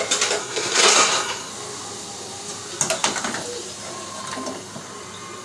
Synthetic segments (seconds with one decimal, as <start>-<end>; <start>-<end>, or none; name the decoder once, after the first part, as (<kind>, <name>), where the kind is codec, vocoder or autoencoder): 0.4-1.5 (codec, SNAC)